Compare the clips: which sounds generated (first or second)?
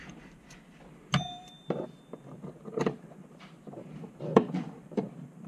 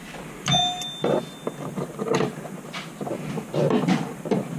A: first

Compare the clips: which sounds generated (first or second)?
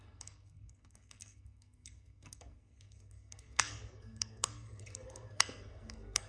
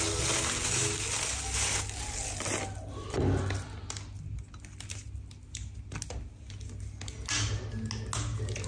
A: first